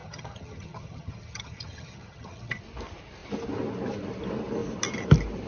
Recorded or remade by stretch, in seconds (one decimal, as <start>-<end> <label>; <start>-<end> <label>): 0.0-2.6 remade; 2.6-5.5 recorded